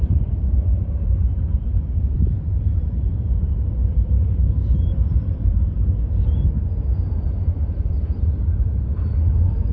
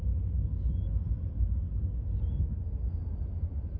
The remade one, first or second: first